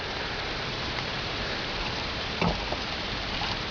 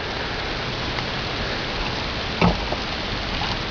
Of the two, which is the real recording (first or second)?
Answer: second